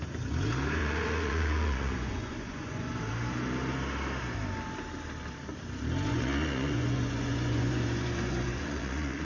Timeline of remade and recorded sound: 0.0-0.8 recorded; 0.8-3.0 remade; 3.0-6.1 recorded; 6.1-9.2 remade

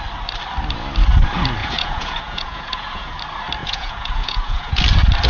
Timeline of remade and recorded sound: 0.0-1.6 recorded; 1.6-3.2 remade; 3.2-3.6 recorded; 3.6-4.8 remade; 4.8-5.3 recorded

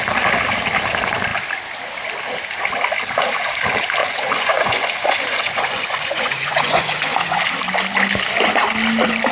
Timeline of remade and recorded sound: 0.0-4.0 recorded; 4.0-7.4 remade; 7.4-9.3 recorded

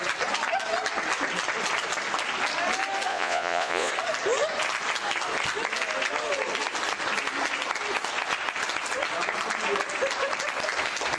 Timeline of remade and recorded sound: 0.0-3.1 recorded; 3.1-3.9 remade; 3.9-11.2 recorded